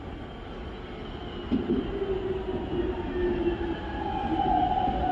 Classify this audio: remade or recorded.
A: recorded